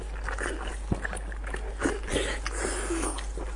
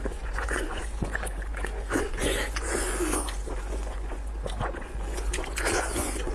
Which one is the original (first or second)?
first